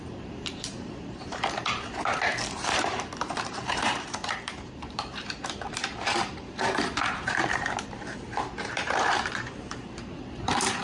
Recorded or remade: remade